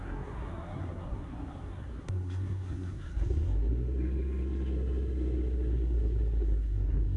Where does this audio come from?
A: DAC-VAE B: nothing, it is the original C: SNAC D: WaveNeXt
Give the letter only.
C